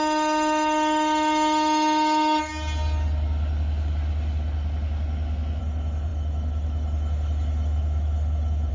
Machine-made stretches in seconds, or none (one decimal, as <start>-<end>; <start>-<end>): 0.0-2.5; 5.6-8.7